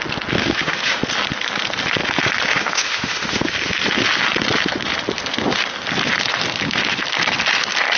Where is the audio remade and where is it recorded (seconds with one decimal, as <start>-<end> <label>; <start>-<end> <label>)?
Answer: 0.0-0.4 recorded; 0.4-1.0 remade; 1.0-2.5 recorded; 2.5-3.4 remade; 3.4-8.0 recorded